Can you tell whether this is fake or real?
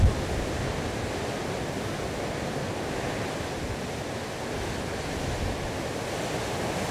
real